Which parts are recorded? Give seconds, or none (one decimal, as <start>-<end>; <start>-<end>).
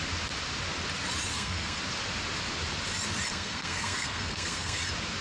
0.0-1.3; 1.8-3.3; 4.8-5.2